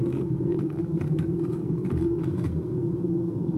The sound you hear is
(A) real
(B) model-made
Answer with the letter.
B